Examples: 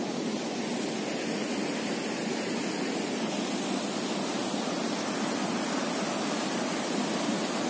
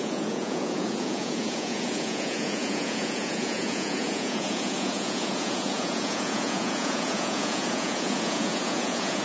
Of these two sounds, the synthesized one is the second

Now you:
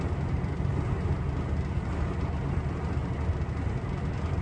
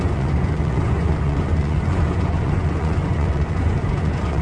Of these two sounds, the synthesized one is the second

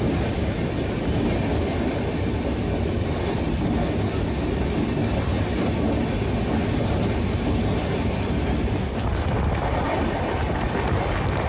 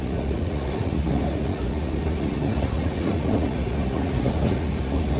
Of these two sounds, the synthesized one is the second